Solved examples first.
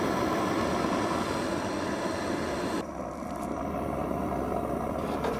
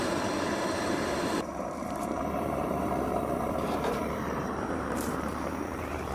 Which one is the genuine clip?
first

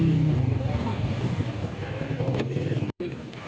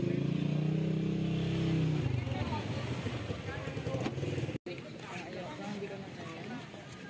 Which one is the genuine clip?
second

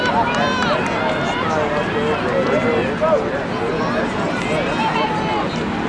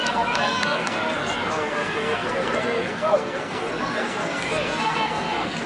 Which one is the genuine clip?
first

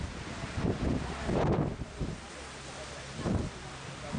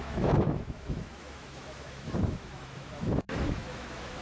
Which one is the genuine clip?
first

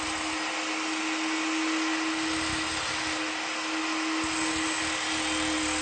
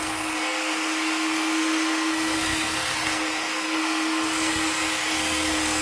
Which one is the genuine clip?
first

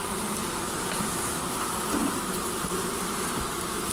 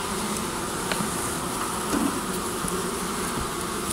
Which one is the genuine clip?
second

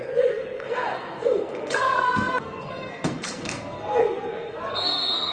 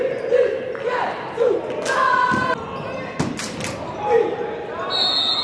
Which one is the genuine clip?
second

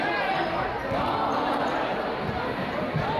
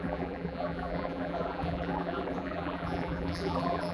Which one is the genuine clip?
first